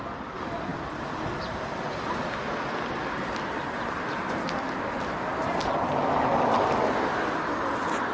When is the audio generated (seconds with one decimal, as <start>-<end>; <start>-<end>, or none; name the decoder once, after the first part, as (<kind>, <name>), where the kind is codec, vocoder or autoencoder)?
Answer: none